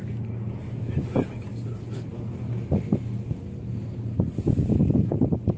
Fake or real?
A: real